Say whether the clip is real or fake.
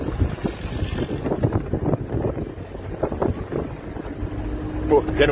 real